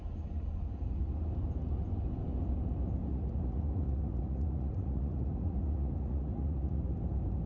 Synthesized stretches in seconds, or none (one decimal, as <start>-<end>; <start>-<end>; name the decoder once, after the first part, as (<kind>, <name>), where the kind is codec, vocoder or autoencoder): 3.1-6.8 (vocoder, Vocos)